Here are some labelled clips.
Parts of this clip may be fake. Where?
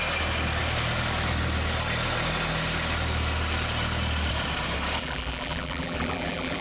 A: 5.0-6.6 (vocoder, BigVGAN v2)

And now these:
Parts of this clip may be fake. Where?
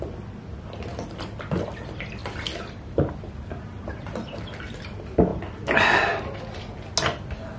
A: none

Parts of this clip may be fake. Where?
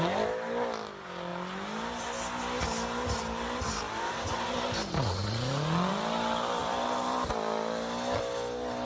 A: 6.6-7.3 (vocoder, BigVGAN v2)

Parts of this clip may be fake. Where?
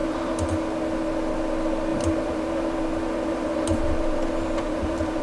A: 0.0-0.5 (vocoder, BigVGAN v2); 1.9-5.2